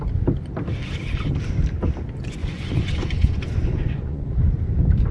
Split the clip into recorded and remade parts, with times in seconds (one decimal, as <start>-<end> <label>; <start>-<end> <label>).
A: 0.0-2.4 recorded; 2.4-4.3 remade; 4.3-5.1 recorded